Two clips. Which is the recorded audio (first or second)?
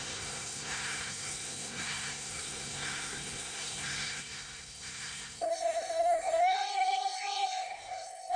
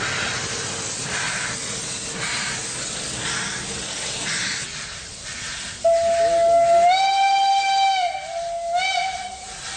second